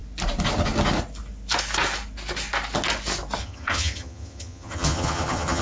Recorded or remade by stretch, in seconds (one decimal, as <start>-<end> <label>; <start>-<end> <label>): 0.0-3.4 recorded; 3.4-5.6 remade